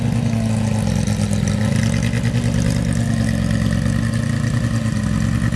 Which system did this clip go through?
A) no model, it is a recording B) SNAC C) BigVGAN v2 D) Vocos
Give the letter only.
A